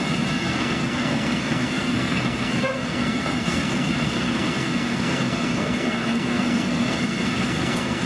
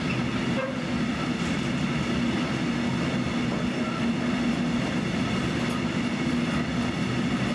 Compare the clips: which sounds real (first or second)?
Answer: second